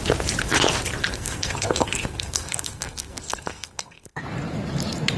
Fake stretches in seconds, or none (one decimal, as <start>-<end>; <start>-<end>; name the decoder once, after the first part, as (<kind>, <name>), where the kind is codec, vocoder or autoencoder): 1.1-4.2 (codec, SNAC)

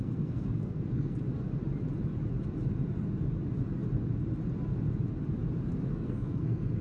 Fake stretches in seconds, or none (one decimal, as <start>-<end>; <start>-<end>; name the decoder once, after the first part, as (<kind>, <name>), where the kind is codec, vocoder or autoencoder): 0.0-1.2 (codec, SNAC); 5.7-6.8